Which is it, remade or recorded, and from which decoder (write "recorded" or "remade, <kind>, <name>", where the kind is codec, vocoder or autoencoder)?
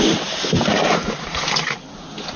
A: recorded